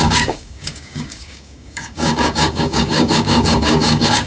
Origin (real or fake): fake